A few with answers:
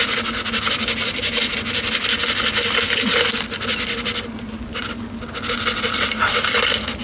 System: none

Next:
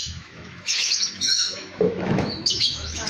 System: autoencoder, DAC-VAE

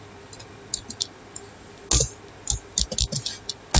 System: none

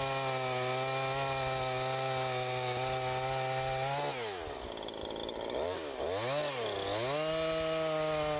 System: none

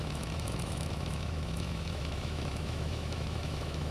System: autoencoder, DAC-VAE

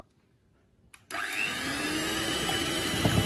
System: none